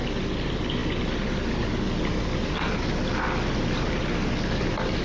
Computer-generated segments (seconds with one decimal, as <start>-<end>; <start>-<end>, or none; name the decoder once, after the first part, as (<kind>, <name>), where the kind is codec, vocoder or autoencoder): none